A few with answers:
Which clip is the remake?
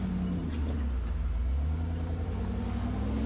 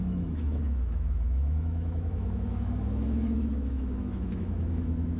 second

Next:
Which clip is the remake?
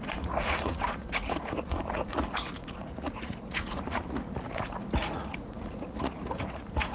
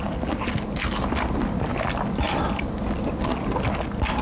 first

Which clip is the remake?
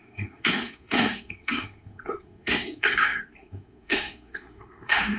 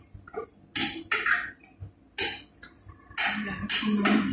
first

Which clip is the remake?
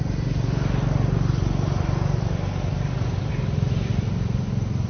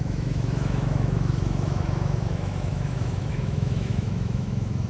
second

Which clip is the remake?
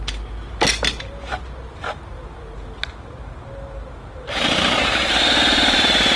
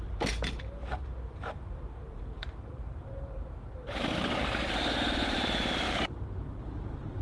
second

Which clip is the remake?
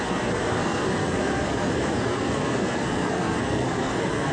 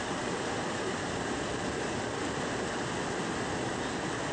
first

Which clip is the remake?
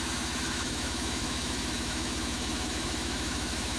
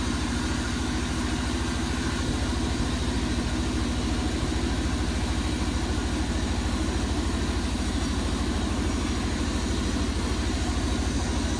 first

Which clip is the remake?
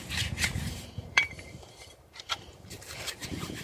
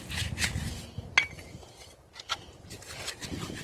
first